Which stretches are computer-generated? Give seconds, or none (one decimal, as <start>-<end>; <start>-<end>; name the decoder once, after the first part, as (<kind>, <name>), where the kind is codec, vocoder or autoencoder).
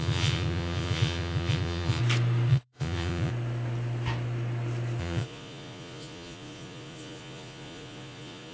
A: 0.0-2.0 (vocoder, Vocos); 2.5-3.3; 5.0-8.5